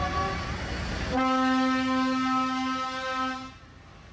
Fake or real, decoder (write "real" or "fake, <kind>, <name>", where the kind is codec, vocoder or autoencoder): real